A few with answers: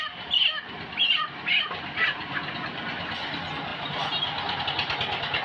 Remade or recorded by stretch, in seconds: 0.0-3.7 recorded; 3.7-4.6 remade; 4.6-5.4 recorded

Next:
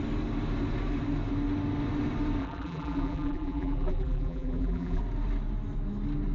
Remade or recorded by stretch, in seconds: 0.0-2.4 recorded; 2.4-5.0 remade; 5.0-6.3 recorded